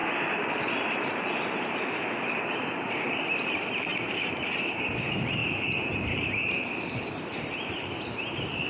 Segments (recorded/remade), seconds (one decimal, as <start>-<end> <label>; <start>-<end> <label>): 0.0-0.8 recorded; 0.8-8.7 remade